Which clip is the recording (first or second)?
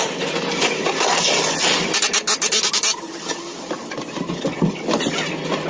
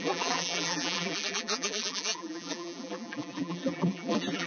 first